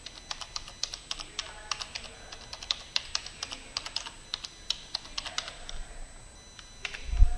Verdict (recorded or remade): recorded